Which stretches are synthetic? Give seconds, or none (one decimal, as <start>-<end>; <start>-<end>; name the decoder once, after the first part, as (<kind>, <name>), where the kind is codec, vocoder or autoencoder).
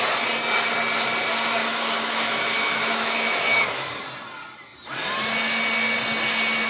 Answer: 1.6-3.7 (autoencoder, DAC-VAE)